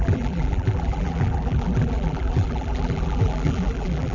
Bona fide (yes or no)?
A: no